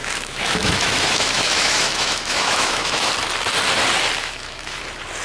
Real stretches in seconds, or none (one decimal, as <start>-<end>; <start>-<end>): 3.1-4.2; 4.8-5.2